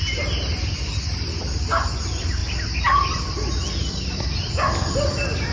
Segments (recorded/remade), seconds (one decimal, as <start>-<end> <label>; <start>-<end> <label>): 0.0-5.5 recorded